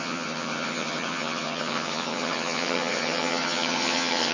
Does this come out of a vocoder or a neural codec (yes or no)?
yes